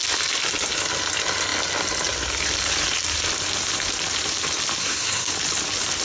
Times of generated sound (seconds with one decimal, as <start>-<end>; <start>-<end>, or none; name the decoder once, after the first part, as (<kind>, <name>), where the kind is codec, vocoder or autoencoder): 4.8-5.3 (codec, SNAC)